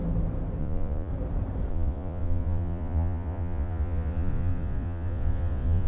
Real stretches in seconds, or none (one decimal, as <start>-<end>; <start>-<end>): 0.0-0.6; 1.1-1.7